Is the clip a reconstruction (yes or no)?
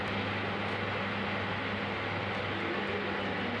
no